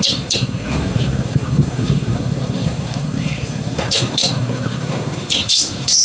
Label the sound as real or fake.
fake